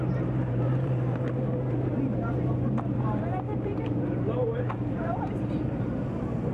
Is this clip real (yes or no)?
no